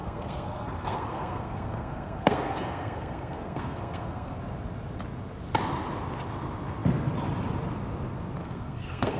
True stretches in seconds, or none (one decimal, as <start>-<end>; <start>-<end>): 4.4-8.4